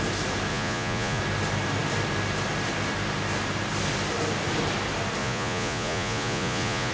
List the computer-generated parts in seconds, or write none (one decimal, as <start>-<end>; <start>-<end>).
0.5-1.2; 5.2-6.9